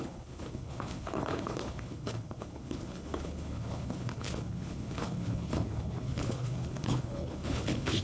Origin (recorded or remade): remade